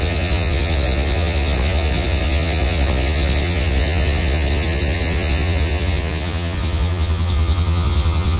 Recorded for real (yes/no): no